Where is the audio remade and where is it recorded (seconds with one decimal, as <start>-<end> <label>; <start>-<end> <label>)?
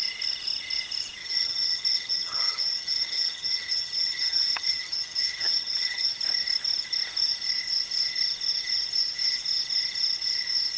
0.0-1.2 recorded; 1.2-6.1 remade; 6.1-10.8 recorded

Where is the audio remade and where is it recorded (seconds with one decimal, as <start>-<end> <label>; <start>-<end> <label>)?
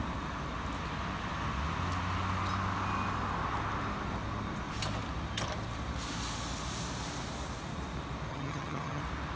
0.0-8.3 recorded; 8.3-9.0 remade; 9.0-9.4 recorded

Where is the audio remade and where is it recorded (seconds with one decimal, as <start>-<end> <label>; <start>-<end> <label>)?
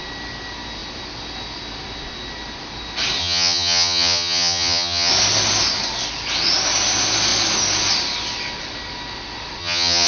0.0-3.2 recorded; 3.2-5.1 remade; 5.1-9.6 recorded; 9.6-10.1 remade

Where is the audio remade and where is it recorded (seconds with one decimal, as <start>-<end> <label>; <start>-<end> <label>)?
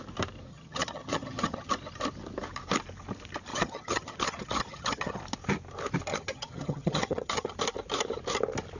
0.0-0.5 recorded; 0.5-1.7 remade; 1.7-3.5 recorded; 3.5-5.2 remade; 5.2-6.1 recorded; 6.1-7.5 remade; 7.5-8.8 recorded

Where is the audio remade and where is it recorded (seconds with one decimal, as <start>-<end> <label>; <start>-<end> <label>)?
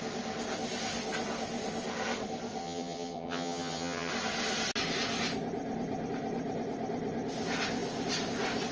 0.0-2.6 recorded; 2.6-4.1 remade; 4.1-8.7 recorded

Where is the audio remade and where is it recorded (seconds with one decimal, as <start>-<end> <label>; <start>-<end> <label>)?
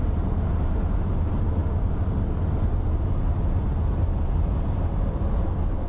0.0-5.9 recorded